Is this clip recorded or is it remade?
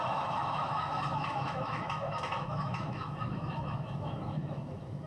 remade